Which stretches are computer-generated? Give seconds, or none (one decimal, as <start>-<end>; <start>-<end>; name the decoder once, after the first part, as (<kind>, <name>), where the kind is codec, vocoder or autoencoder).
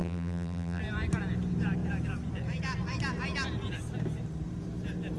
0.0-0.8 (vocoder, BigVGAN v2)